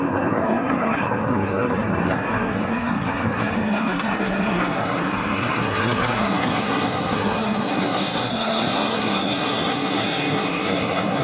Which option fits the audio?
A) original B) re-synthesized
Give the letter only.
B